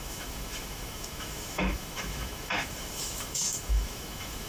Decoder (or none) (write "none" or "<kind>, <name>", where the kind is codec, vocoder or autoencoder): autoencoder, DAC-VAE